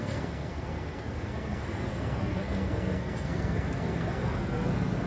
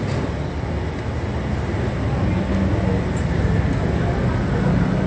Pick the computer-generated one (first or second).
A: first